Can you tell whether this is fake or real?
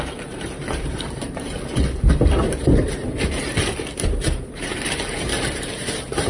fake